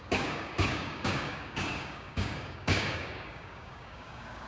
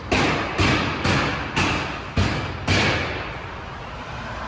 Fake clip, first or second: first